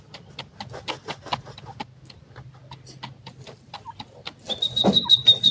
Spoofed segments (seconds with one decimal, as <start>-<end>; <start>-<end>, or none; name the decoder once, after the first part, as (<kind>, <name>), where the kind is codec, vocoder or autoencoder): none